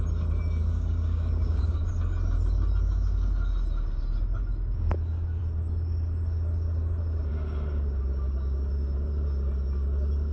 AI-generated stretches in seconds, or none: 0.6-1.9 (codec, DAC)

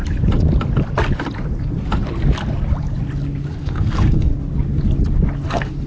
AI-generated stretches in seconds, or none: 3.5-4.3 (codec, SNAC); 5.5-5.9

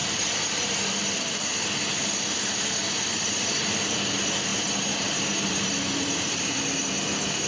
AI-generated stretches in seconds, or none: 0.0-0.9 (vocoder, BigVGAN v2); 4.5-6.5

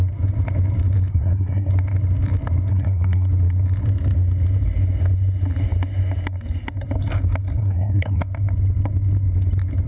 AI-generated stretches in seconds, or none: 1.1-1.7 (codec, SNAC); 2.7-3.3; 7.6-8.2

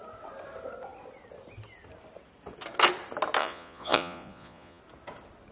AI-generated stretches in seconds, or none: 3.4-4.8 (vocoder, Vocos)